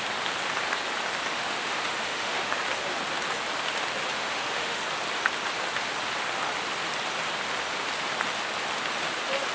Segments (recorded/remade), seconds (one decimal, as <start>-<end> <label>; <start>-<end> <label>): 0.0-1.3 recorded; 1.3-2.6 remade; 2.6-4.2 recorded; 4.2-4.8 remade; 4.8-9.5 recorded